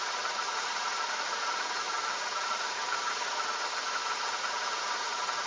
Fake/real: fake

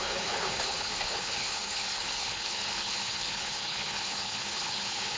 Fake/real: fake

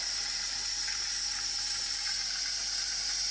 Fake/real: real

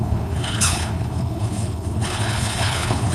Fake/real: fake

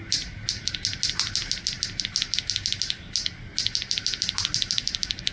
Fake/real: real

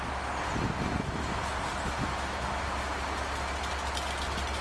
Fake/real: real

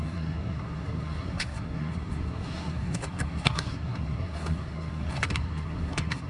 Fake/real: fake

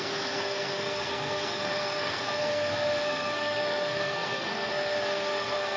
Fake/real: fake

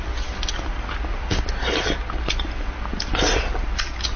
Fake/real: real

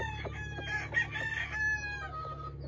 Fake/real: real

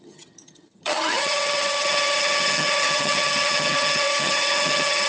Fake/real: fake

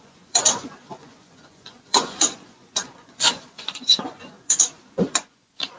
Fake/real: fake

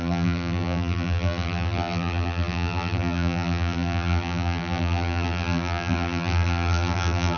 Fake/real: fake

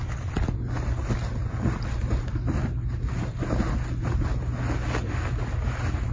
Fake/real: real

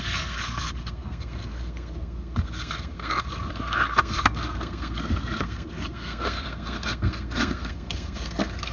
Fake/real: fake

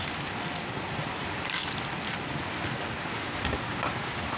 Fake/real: real